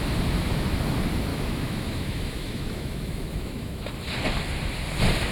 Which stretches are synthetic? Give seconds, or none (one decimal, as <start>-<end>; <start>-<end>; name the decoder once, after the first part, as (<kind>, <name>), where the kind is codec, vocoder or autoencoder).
1.3-3.9 (autoencoder, DAC-VAE)